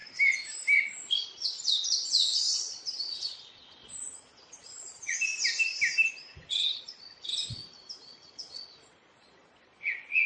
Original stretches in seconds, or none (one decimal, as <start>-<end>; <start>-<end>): 0.0-1.0; 5.3-6.5; 7.6-8.1